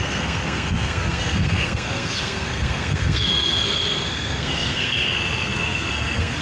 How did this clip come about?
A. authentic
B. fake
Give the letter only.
B